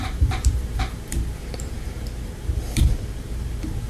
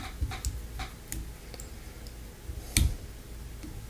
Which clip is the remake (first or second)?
first